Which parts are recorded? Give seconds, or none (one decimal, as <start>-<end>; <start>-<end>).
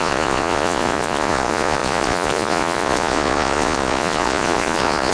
none